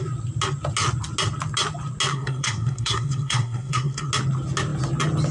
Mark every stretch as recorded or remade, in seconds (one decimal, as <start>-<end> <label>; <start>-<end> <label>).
0.0-2.1 recorded; 2.1-4.1 remade; 4.1-5.3 recorded